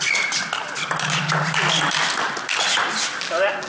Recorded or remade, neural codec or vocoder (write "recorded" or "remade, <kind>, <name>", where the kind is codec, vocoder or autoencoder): recorded